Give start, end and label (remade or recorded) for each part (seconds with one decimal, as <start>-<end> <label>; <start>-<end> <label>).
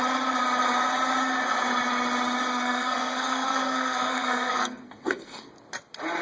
0.0-2.5 recorded; 2.5-5.5 remade; 5.5-6.2 recorded